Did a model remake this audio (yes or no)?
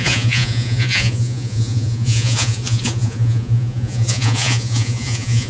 yes